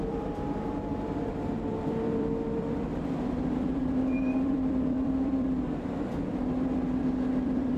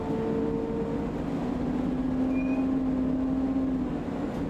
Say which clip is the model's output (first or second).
first